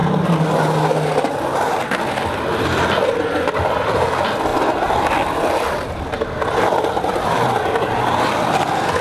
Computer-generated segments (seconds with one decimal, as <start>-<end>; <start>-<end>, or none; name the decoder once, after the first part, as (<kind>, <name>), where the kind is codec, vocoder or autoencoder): none